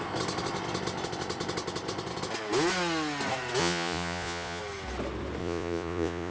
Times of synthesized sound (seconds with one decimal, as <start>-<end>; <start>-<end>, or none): 3.6-4.6; 5.4-6.3